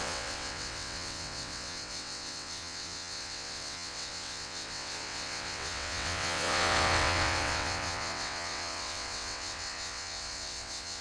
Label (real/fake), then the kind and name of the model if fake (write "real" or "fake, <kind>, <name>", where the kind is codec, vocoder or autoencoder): fake, vocoder, WaveNeXt